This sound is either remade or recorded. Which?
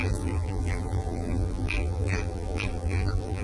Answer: remade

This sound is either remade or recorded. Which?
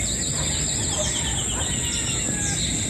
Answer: recorded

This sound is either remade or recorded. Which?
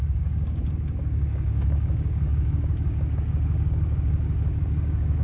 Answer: remade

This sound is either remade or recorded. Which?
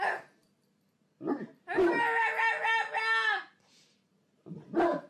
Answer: recorded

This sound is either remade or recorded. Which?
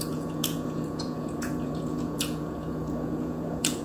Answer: remade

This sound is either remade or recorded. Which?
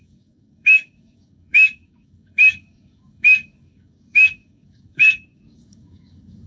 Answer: remade